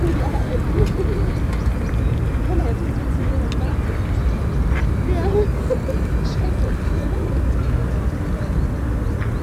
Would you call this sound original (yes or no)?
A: yes